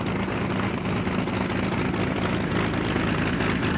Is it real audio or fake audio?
real